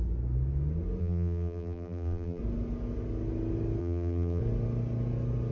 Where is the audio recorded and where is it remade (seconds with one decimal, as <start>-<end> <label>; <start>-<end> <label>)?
0.0-1.0 recorded; 1.0-2.4 remade; 2.4-3.8 recorded; 3.8-4.4 remade; 4.4-5.5 recorded